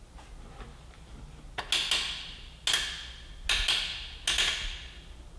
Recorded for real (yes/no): yes